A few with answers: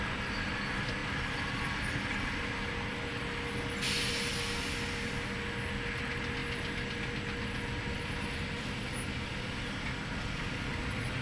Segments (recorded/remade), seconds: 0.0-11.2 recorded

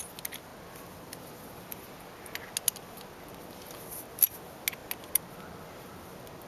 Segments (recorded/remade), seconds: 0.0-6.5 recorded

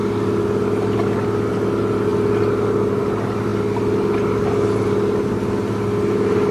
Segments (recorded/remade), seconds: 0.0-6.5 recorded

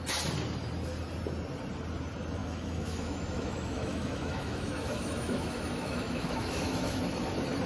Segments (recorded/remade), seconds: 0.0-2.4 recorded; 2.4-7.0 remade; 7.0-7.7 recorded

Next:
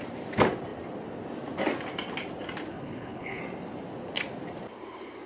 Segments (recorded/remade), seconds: 0.0-2.7 recorded; 2.7-3.4 remade; 3.4-5.3 recorded

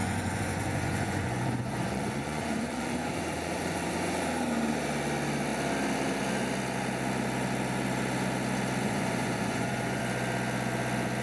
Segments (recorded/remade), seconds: 0.0-4.2 remade; 4.2-8.8 recorded; 8.8-10.0 remade; 10.0-11.2 recorded